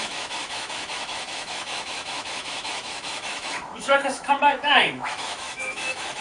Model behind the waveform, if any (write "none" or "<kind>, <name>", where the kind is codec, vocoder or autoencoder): autoencoder, DAC-VAE